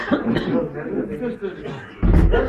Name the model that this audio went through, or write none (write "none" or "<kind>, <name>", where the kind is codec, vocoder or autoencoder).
none